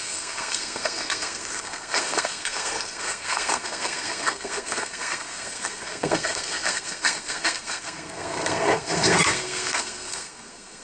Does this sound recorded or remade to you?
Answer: remade